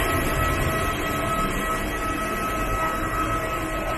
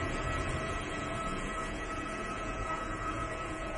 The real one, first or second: first